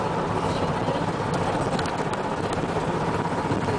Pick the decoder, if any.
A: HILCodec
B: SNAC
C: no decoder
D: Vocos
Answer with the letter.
C